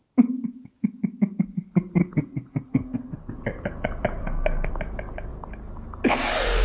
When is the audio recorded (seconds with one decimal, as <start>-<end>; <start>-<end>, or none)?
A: 0.0-2.0; 3.3-4.2; 4.7-6.6